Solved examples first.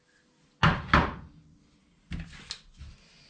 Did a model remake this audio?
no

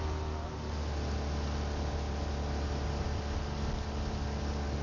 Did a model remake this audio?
no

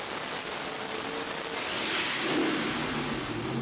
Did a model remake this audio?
no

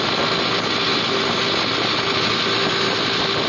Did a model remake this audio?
no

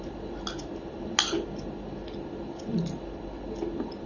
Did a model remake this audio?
no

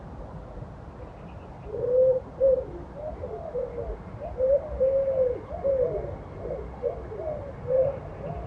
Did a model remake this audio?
no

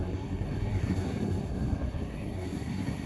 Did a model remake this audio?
yes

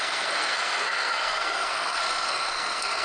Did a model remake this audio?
yes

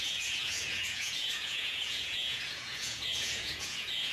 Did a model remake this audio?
yes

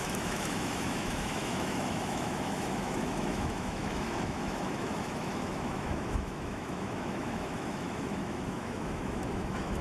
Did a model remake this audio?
yes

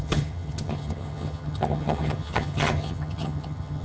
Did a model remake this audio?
yes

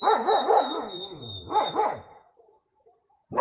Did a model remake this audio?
yes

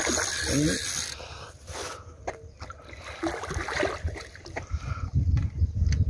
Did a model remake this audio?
no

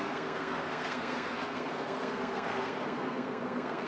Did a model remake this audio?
yes